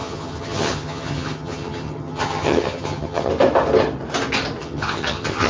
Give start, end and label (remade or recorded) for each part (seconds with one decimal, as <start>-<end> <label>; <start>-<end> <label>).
0.0-3.3 remade; 3.3-4.6 recorded; 4.6-5.5 remade